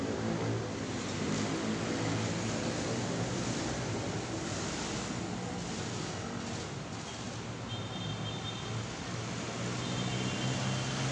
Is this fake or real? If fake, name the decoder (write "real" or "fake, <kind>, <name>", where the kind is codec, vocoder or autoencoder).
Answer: real